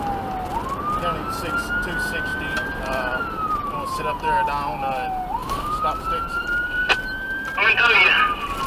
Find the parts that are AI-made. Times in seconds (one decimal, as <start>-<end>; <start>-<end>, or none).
2.3-4.0; 5.4-7.0